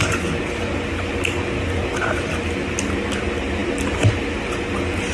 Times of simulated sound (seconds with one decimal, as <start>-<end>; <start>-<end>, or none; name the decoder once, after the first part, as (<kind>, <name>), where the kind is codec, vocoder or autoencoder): none